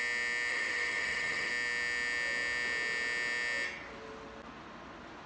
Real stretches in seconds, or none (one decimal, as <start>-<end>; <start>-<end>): 0.0-0.5; 1.5-5.3